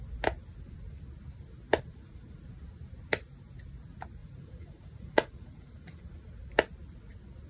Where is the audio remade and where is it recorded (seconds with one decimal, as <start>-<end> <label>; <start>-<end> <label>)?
0.0-1.9 recorded; 1.9-2.4 remade; 2.4-4.2 recorded; 4.2-6.1 remade; 6.1-7.5 recorded